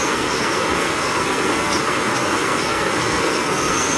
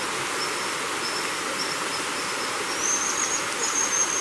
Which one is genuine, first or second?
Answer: second